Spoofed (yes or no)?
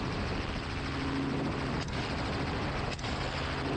no